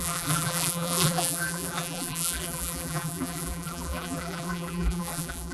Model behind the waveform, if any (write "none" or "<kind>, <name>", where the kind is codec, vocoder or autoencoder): vocoder, BigVGAN v2